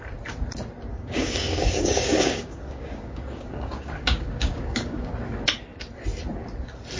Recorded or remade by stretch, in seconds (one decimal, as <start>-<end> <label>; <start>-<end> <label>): 0.0-0.9 recorded; 0.9-5.1 remade; 5.1-7.0 recorded